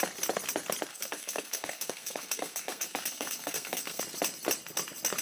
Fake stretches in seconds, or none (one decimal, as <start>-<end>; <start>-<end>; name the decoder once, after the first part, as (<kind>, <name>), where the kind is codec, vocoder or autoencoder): 0.9-4.0 (codec, SNAC)